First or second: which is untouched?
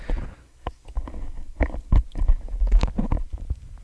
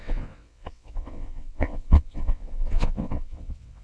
first